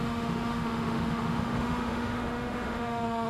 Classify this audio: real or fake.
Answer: fake